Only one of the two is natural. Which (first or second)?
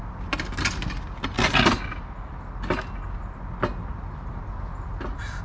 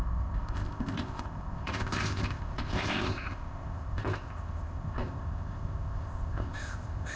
first